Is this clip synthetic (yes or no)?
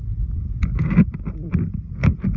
no